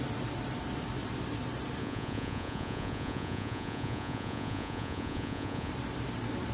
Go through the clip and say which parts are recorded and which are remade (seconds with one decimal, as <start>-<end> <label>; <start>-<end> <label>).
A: 0.0-1.8 recorded; 1.8-5.7 remade; 5.7-6.5 recorded